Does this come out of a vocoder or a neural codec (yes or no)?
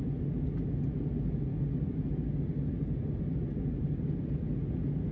no